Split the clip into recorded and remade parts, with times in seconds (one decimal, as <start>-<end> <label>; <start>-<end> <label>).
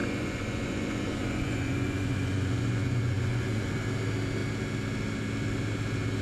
0.0-3.7 remade; 3.7-6.2 recorded